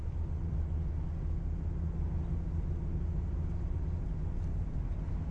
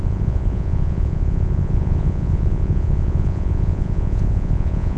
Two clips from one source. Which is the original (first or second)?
first